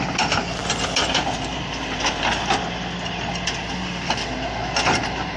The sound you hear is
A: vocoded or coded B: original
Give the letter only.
B